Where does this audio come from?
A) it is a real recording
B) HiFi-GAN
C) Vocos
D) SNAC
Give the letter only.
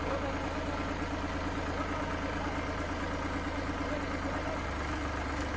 A